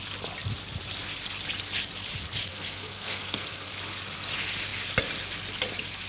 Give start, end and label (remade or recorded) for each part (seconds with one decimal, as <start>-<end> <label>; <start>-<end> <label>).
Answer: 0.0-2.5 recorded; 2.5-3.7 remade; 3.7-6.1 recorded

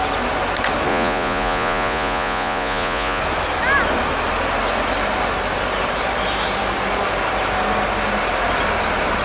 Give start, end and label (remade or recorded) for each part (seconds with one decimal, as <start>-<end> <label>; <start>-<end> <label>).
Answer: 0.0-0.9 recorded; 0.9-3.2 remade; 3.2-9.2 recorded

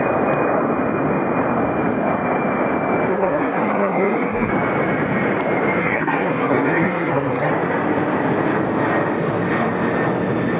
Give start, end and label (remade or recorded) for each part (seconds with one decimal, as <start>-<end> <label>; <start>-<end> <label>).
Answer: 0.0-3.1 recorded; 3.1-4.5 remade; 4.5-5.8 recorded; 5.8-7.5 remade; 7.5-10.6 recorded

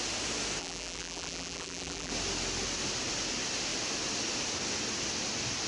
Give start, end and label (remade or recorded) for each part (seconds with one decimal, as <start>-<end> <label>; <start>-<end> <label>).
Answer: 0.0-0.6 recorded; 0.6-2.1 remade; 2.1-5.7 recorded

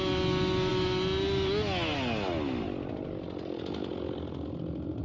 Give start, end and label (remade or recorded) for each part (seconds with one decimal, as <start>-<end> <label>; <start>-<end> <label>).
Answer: 0.0-5.0 recorded

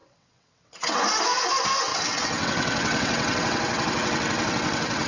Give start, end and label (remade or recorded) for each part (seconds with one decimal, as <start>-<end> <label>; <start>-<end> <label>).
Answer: 0.0-1.0 remade; 1.0-1.9 recorded; 1.9-5.1 remade